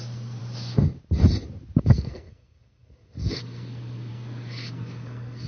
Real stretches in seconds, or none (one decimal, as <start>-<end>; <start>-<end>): 0.4-1.8